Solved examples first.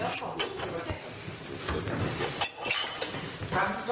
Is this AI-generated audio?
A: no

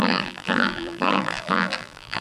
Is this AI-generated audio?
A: yes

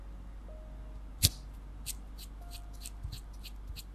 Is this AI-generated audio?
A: no